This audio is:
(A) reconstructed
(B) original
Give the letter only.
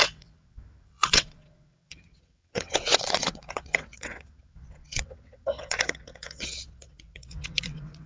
A